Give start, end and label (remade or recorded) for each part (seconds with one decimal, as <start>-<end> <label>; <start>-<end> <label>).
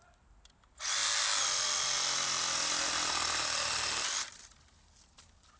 0.0-5.6 recorded